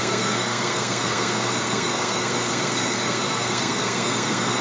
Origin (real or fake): fake